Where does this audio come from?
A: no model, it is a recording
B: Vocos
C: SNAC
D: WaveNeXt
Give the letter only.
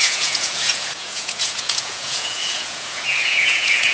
B